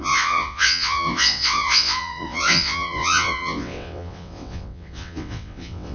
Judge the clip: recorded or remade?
remade